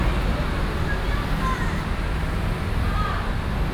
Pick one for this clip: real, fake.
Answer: real